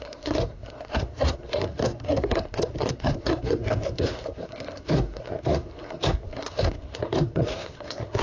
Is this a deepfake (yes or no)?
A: yes